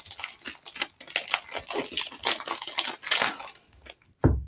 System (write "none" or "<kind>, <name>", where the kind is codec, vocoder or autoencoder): none